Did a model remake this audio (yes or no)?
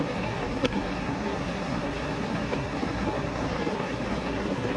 yes